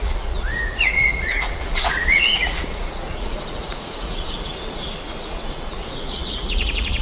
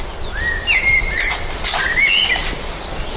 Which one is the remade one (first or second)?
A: first